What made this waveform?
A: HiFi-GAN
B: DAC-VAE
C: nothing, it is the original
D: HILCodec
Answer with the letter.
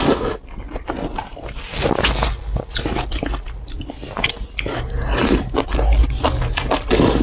C